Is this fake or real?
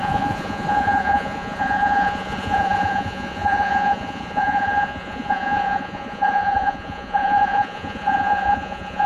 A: fake